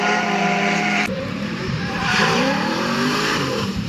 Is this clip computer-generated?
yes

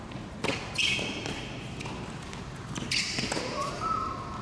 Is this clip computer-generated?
no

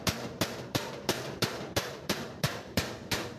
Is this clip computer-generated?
yes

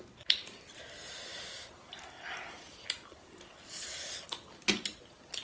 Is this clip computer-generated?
no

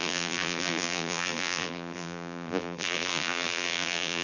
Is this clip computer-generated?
yes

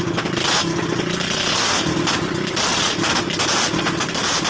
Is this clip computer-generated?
no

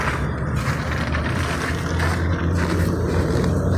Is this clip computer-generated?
no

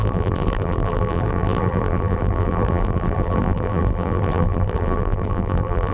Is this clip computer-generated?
yes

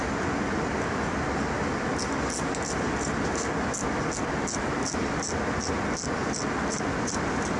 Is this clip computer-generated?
no